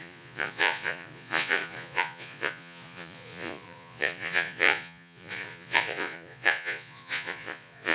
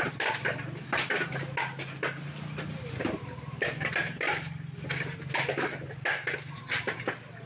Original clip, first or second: second